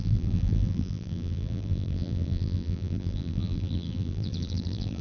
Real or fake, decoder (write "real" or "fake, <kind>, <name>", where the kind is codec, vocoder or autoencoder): fake, vocoder, BigVGAN v2